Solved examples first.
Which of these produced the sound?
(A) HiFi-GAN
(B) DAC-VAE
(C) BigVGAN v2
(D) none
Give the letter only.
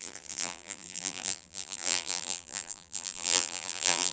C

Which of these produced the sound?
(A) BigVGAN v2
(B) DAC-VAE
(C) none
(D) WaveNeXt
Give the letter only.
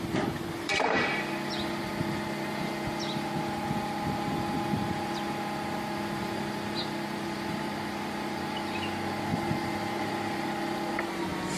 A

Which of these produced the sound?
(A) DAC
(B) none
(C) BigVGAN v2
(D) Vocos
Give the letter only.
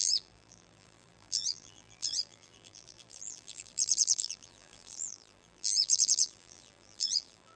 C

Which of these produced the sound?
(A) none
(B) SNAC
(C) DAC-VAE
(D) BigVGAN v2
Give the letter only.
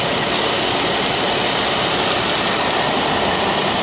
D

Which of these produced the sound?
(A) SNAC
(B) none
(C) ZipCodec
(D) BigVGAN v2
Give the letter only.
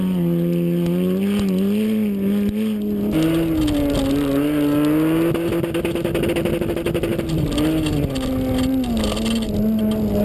B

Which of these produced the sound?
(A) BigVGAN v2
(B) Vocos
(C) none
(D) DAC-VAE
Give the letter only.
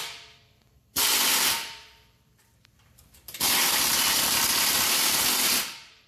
A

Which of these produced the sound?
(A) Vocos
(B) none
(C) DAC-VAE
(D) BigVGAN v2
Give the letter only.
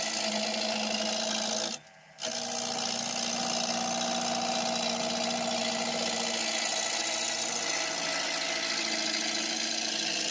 B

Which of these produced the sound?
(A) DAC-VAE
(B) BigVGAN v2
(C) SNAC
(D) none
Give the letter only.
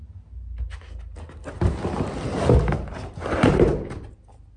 D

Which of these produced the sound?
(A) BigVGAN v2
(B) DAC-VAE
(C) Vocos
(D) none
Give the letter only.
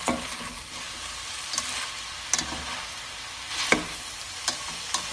D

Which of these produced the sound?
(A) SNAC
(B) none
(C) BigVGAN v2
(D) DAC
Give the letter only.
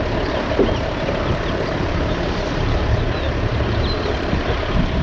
C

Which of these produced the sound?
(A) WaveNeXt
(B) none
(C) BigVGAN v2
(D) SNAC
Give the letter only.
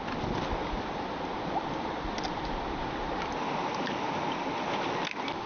B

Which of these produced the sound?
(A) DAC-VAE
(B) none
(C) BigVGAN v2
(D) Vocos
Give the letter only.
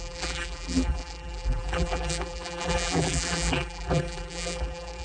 C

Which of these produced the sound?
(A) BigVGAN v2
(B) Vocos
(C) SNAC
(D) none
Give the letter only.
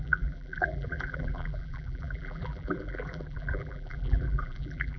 A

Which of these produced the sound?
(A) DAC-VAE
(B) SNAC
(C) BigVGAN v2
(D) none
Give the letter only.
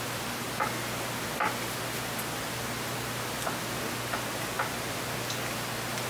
D